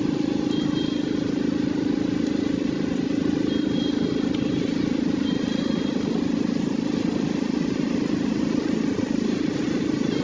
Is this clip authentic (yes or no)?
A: yes